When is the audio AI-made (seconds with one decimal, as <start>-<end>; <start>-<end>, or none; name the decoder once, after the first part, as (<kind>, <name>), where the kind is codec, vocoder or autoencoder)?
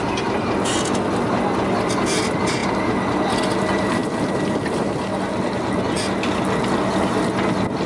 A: none